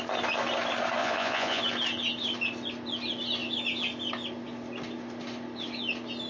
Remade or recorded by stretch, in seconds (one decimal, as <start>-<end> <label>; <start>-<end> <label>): 0.0-1.0 recorded; 1.0-1.6 remade; 1.6-6.3 recorded